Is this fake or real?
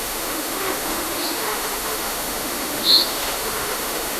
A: fake